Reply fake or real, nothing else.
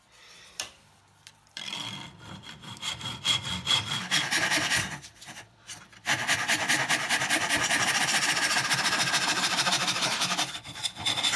fake